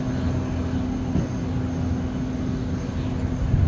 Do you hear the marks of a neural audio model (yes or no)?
no